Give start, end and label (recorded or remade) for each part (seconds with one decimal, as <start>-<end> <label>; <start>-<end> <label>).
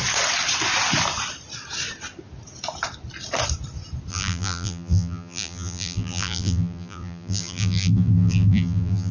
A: 0.0-4.1 recorded; 4.1-9.1 remade